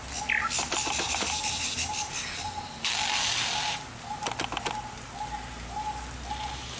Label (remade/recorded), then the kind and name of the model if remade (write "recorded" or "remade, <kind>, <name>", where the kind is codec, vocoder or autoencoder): recorded